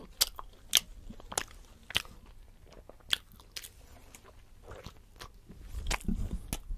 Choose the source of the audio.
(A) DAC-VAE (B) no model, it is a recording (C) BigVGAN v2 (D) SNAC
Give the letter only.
B